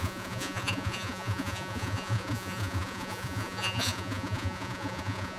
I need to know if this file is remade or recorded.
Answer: remade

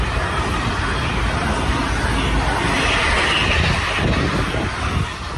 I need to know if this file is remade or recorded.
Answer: recorded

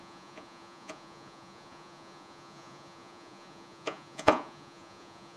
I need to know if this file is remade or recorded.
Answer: remade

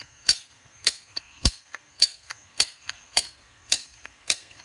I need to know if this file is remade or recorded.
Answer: remade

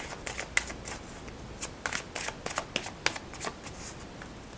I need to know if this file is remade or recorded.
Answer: recorded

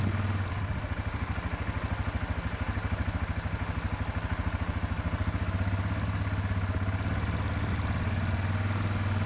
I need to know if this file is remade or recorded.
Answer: recorded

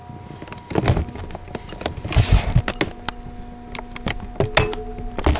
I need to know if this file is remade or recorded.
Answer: recorded